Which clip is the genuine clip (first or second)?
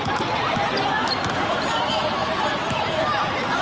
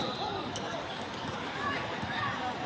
first